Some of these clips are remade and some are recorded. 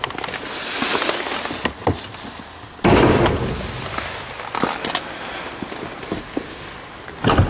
recorded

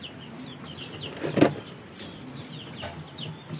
recorded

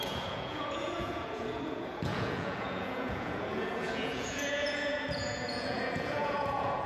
remade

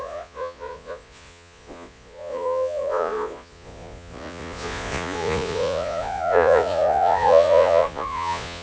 remade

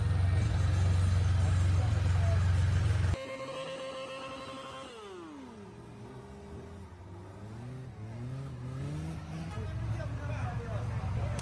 recorded